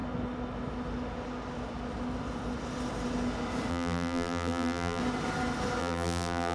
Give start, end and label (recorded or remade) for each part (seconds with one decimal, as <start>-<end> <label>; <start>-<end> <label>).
0.0-3.7 recorded; 3.7-5.0 remade; 5.0-5.8 recorded; 5.8-6.5 remade